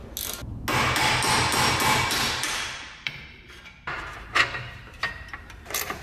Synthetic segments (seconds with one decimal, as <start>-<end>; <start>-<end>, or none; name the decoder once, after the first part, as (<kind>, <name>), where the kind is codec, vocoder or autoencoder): 1.7-6.0 (vocoder, BigVGAN v2)